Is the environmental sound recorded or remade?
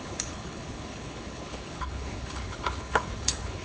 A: remade